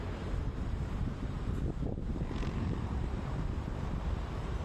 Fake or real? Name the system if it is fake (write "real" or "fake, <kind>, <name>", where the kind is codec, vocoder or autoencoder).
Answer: fake, vocoder, BigVGAN v2